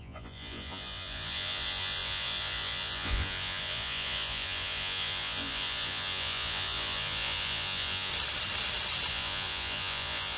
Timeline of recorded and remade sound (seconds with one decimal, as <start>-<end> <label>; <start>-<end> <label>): 0.0-8.1 remade; 8.1-9.1 recorded; 9.1-10.4 remade